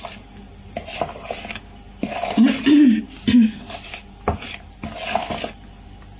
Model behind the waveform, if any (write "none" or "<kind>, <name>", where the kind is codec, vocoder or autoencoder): none